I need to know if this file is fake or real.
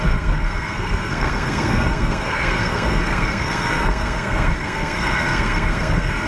fake